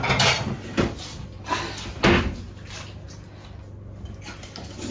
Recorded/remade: recorded